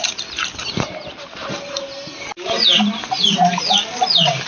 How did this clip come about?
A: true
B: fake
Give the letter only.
A